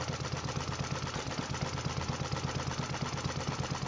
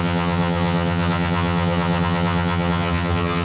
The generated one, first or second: second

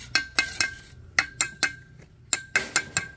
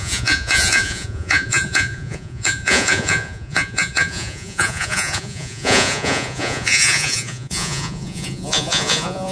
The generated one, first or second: second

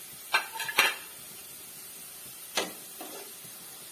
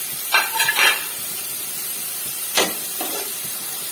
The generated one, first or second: second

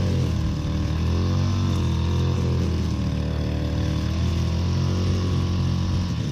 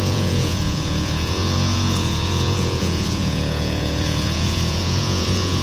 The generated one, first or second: second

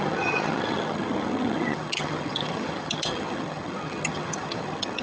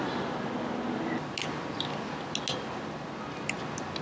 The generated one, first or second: first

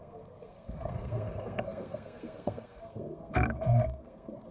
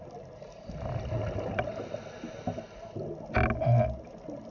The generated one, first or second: first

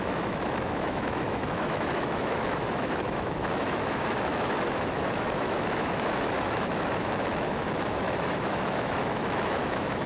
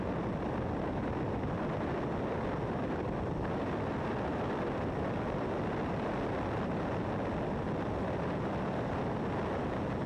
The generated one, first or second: first